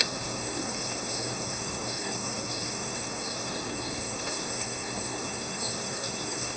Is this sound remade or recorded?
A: remade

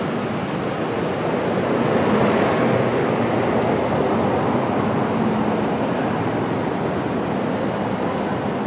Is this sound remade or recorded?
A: recorded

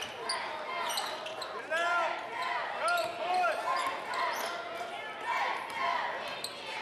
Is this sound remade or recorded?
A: recorded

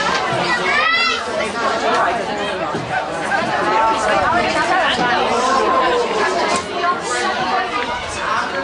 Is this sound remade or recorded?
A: recorded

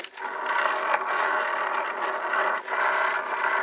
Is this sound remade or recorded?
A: recorded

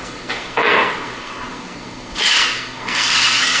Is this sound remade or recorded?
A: remade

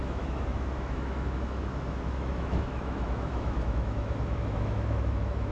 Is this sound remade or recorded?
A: remade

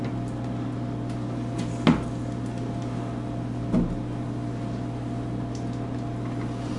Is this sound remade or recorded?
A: recorded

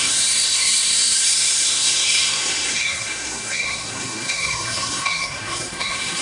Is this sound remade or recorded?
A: remade